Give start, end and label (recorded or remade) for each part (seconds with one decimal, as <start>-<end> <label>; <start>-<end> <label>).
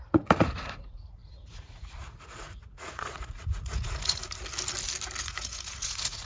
0.0-4.2 remade; 4.2-5.2 recorded; 5.2-6.2 remade